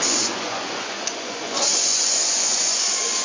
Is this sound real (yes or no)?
no